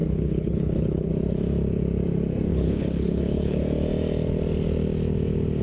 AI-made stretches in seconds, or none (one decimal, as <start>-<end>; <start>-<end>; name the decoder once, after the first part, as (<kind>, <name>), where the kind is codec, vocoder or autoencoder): 0.0-1.1 (codec, HILCodec); 2.5-3.6